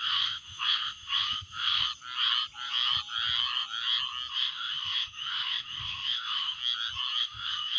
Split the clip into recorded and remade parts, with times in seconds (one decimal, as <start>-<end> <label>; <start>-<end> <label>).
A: 0.0-1.9 remade; 1.9-4.3 recorded; 4.3-6.6 remade; 6.6-7.2 recorded; 7.2-7.8 remade